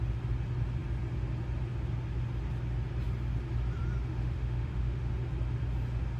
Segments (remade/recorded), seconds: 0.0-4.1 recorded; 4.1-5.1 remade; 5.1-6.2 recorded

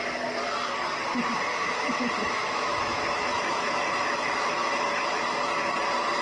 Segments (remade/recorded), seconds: 0.0-1.5 recorded; 1.5-5.2 remade; 5.2-6.2 recorded

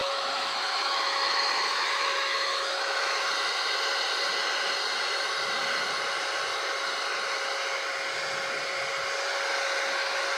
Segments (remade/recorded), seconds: 0.0-3.3 remade; 3.3-10.4 recorded

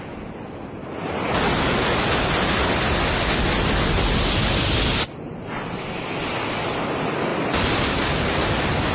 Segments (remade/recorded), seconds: 0.0-8.9 recorded

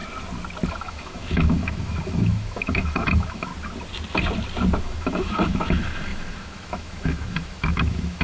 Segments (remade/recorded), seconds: 0.0-0.7 recorded; 0.7-3.5 remade; 3.5-4.8 recorded; 4.8-8.2 remade

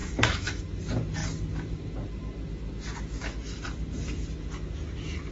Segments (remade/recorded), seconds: 0.0-0.6 remade; 0.6-5.3 recorded

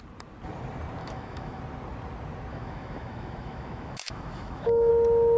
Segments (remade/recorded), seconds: 0.0-1.0 recorded; 1.0-1.6 remade; 1.6-2.5 recorded; 2.5-4.9 remade; 4.9-5.4 recorded